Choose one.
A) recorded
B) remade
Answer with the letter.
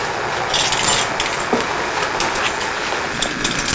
A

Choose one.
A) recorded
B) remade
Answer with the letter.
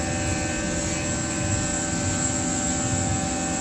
A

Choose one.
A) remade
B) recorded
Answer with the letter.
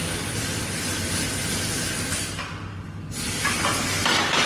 B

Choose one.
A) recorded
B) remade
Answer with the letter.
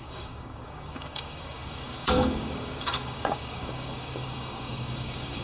B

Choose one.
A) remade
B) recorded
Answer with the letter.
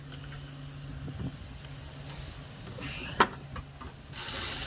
B